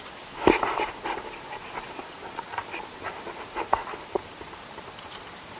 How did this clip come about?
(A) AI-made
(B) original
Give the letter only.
B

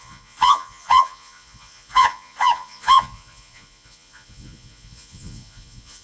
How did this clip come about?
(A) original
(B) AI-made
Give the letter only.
B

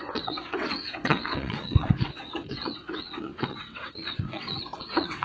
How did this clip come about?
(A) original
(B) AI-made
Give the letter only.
B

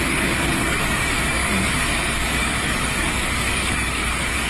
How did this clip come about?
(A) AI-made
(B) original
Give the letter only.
A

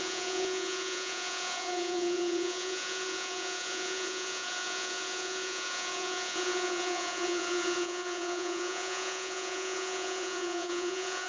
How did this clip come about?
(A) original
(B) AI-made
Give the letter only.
B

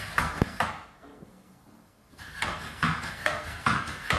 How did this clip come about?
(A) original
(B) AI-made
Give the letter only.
B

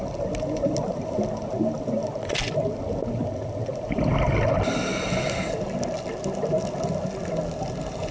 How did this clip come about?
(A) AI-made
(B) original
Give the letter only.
B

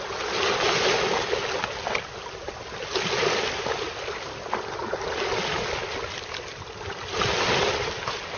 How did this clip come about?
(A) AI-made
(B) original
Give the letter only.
B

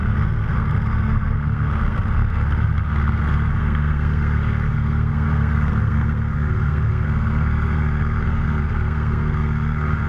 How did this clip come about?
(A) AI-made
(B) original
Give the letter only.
A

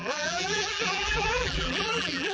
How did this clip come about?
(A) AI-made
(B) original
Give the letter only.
A